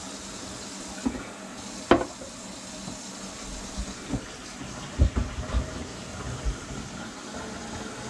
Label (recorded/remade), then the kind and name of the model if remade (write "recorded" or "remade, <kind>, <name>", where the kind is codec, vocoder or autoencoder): recorded